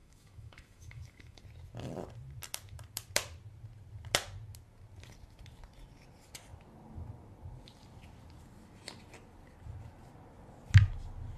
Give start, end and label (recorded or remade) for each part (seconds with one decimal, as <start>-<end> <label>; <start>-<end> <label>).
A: 0.0-1.4 remade; 1.4-11.4 recorded